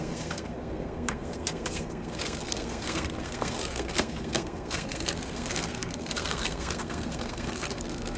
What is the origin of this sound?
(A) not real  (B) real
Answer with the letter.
A